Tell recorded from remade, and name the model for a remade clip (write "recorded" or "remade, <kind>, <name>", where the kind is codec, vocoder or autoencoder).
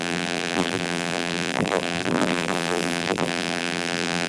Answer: remade, vocoder, BigVGAN v2